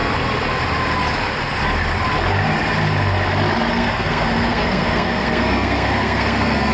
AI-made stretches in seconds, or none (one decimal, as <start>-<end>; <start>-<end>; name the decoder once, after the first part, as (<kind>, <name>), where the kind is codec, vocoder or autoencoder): 3.7-6.7 (codec, SNAC)